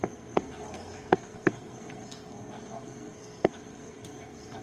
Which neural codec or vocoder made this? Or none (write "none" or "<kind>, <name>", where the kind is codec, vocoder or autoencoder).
codec, SNAC